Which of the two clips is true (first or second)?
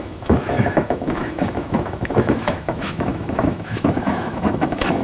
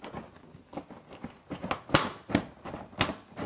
second